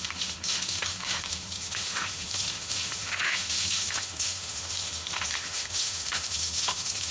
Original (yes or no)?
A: no